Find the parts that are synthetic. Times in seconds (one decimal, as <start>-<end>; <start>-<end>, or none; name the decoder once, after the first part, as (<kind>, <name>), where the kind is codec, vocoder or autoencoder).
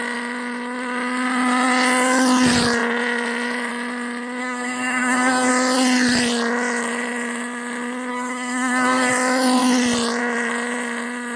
4.4-5.5 (codec, SNAC); 8.1-9.1